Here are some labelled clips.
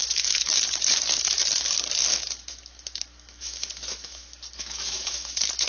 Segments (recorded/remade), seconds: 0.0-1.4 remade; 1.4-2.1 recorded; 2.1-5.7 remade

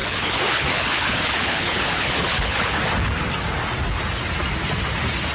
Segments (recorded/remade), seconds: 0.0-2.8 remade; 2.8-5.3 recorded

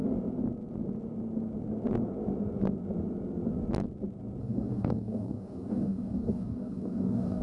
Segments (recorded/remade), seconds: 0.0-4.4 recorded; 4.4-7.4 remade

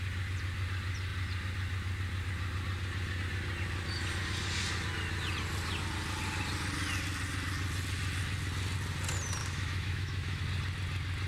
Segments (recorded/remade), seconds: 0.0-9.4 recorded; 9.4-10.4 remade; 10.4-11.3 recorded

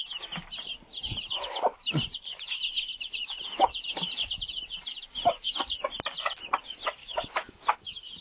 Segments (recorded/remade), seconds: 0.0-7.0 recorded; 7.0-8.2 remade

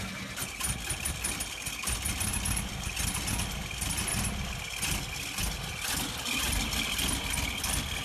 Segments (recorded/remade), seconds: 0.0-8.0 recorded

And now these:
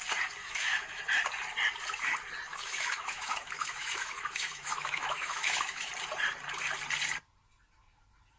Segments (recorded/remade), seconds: 0.0-0.4 recorded; 0.4-1.0 remade; 1.0-2.5 recorded; 2.5-5.9 remade; 5.9-8.4 recorded